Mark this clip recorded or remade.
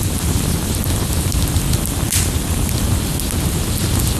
recorded